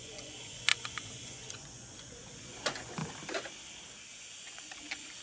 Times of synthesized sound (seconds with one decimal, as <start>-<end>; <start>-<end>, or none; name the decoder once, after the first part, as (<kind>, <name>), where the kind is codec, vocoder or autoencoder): 0.0-3.0 (vocoder, Vocos); 4.1-5.2